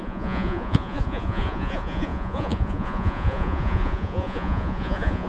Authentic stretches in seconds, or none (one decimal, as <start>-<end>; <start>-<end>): none